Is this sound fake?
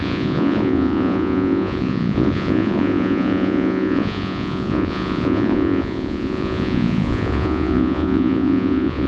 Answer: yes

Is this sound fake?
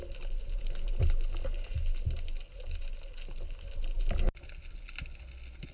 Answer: no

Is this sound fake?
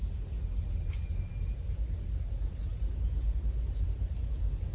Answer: no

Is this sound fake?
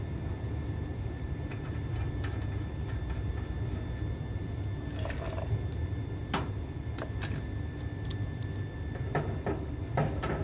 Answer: no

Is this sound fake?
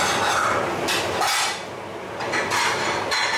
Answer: no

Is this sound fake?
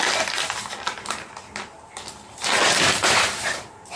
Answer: no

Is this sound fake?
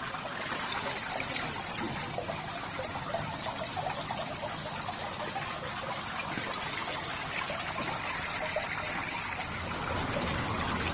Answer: no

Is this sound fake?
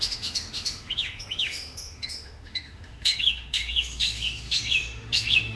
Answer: yes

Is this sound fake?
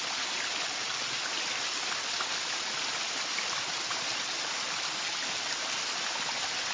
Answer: no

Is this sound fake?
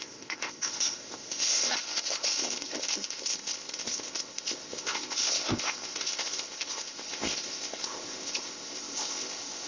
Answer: yes